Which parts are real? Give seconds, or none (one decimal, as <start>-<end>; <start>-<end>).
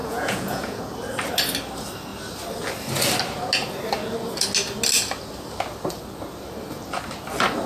0.8-7.7